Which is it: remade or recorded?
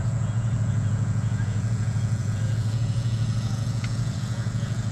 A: remade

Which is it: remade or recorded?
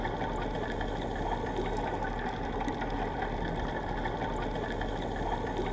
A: recorded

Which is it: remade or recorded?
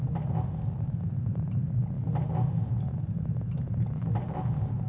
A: recorded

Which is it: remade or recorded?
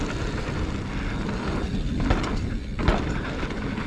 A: recorded